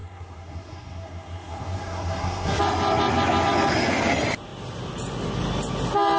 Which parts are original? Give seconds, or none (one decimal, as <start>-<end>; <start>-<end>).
2.6-6.2